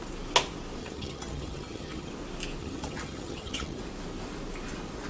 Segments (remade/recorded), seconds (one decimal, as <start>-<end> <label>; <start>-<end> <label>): 0.0-0.8 recorded; 0.8-2.1 remade; 2.1-2.6 recorded; 2.6-3.8 remade; 3.8-5.1 recorded